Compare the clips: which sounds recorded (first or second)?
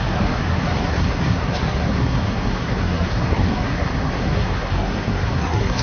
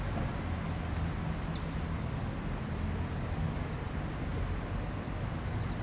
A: second